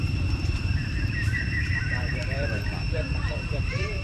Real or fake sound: fake